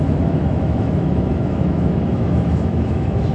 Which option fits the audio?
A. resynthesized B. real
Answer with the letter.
A